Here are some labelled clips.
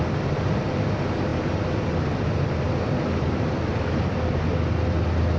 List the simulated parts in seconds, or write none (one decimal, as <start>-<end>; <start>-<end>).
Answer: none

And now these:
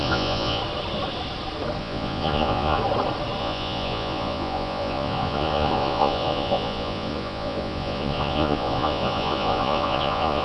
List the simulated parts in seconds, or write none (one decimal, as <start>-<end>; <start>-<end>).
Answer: 0.0-0.6; 1.8-2.8; 3.4-10.4

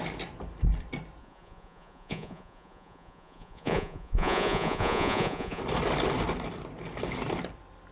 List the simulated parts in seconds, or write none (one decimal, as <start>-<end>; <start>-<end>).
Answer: 1.2-5.6

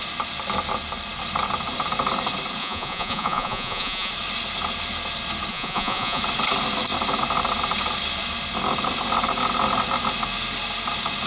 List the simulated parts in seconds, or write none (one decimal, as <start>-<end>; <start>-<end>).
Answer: 2.6-4.1; 5.5-6.2